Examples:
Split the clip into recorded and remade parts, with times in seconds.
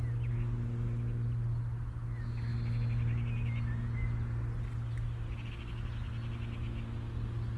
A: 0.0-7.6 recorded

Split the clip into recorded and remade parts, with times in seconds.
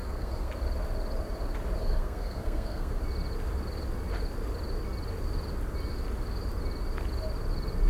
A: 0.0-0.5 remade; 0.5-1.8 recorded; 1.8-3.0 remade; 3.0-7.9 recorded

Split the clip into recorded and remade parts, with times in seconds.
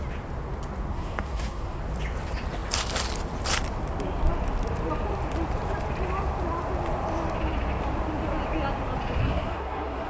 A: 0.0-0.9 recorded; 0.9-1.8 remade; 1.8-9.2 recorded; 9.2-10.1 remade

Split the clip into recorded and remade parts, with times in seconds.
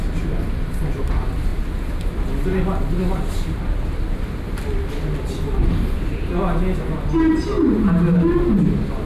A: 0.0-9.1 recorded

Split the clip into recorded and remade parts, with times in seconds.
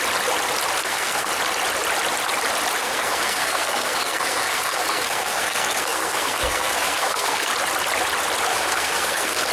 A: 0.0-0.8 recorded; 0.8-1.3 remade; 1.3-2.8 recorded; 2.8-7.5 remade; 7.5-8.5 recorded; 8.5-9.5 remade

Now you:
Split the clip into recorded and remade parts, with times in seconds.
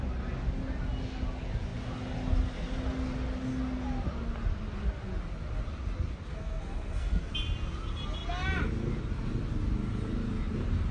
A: 0.0-6.3 recorded; 6.3-7.3 remade; 7.3-10.9 recorded